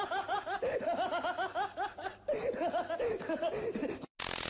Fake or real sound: real